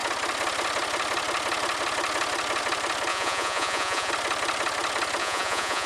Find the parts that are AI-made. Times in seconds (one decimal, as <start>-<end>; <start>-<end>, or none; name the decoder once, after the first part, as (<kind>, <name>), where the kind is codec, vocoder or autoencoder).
3.1-4.1 (vocoder, Vocos); 5.2-5.9